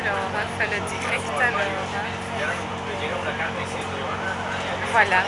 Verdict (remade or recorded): recorded